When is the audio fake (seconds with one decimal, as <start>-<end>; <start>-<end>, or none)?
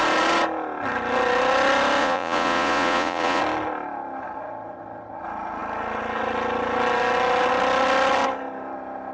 2.0-3.4